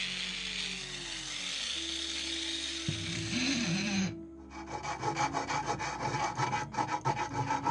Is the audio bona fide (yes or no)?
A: yes